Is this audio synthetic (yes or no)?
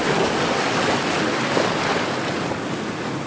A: no